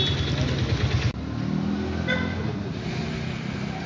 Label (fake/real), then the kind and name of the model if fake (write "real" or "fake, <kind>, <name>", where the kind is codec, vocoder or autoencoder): real